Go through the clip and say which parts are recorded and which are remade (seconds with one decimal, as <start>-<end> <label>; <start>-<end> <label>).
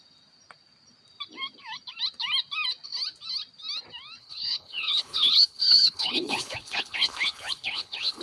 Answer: 0.0-4.2 recorded; 4.2-8.2 remade